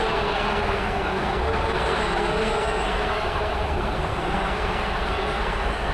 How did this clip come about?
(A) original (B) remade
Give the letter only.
B